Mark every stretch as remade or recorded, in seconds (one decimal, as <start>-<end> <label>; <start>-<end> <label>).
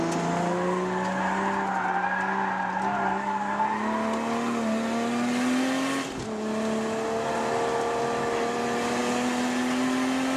0.0-10.4 recorded